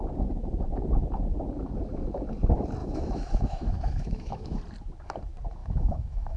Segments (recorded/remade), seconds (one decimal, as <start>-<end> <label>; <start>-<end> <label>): 0.0-2.8 recorded; 2.8-4.6 remade; 4.6-5.6 recorded; 5.6-6.4 remade